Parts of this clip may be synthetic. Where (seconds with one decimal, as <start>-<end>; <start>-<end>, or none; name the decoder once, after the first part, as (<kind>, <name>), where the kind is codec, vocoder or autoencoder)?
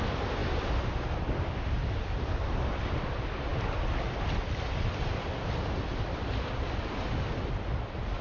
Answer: 0.4-1.6 (vocoder, BigVGAN v2)